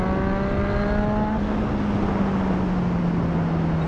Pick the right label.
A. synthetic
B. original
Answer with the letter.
B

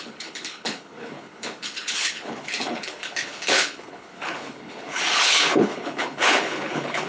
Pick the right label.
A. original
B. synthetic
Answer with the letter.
B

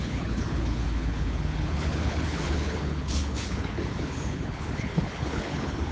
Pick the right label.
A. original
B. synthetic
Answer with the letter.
B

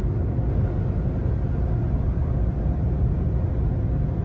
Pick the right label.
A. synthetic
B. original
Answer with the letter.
B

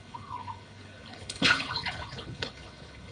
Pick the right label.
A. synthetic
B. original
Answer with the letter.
A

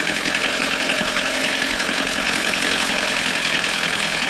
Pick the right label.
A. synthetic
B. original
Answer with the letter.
A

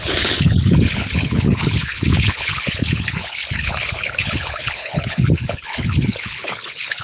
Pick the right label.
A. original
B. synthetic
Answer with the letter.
B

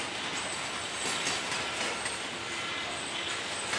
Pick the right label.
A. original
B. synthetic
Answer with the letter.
A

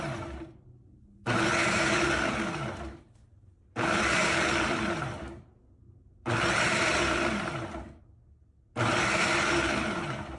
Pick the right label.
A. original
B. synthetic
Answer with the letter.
A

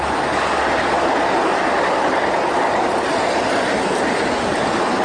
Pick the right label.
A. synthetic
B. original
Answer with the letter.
B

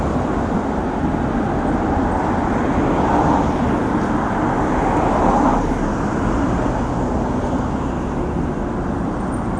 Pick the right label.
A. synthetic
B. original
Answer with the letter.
B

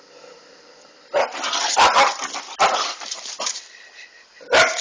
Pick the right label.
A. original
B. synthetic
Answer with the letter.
A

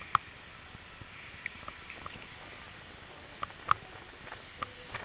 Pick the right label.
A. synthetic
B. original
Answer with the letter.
B